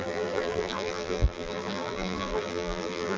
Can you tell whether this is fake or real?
fake